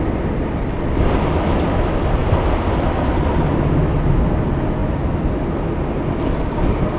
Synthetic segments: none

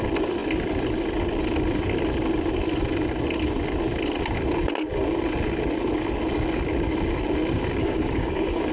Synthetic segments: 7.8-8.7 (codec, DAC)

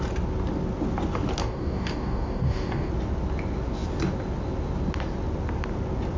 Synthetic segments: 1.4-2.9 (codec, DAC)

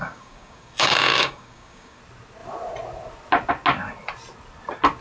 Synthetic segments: 0.0-2.0 (codec, DAC)

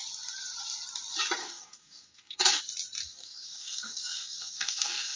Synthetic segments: 1.4-2.6 (codec, DAC); 3.0-5.2